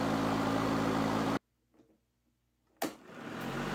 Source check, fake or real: real